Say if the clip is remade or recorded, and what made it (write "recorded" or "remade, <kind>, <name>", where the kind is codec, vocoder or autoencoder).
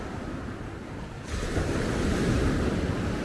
recorded